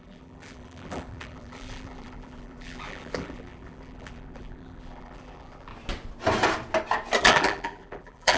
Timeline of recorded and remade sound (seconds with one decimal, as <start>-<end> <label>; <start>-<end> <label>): 0.0-5.7 remade; 5.7-7.2 recorded; 7.2-8.4 remade